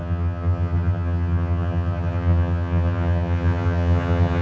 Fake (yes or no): yes